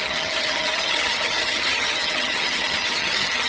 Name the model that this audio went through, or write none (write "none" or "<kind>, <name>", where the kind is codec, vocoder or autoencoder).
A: vocoder, HiFi-GAN